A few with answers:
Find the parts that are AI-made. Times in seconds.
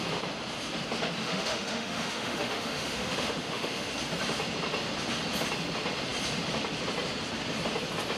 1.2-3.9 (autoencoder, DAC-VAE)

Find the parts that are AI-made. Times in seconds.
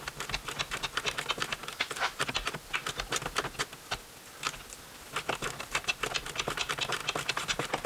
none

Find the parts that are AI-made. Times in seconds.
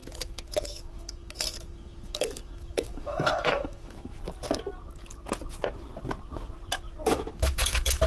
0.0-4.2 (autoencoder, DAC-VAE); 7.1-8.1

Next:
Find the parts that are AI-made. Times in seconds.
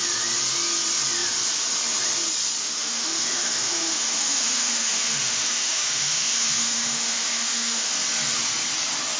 2.6-7.9 (autoencoder, DAC-VAE)